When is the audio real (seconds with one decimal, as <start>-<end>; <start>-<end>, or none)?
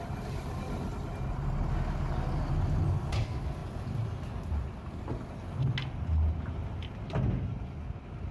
0.0-8.3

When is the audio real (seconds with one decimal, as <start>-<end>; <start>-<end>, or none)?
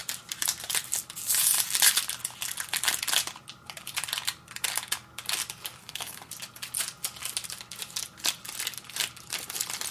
0.0-5.8; 6.3-9.9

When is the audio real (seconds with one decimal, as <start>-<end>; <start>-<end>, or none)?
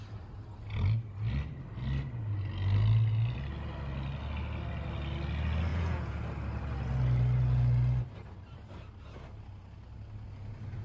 0.0-5.7; 6.2-10.8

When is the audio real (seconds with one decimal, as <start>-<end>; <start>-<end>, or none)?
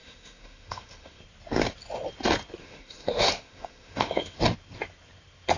1.2-2.6; 4.4-5.6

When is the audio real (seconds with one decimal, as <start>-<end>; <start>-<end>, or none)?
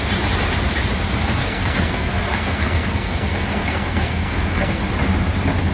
0.0-1.4; 4.8-5.7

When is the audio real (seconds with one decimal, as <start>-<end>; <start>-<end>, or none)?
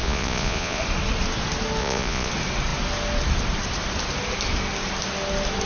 0.8-1.8; 2.3-5.7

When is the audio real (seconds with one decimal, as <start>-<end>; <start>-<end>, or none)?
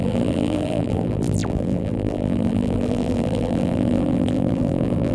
none